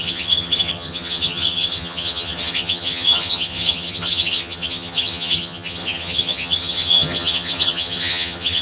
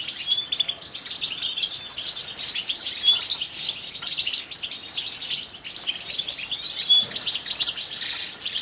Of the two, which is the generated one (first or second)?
first